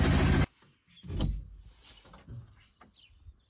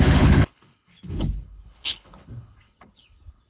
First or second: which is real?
first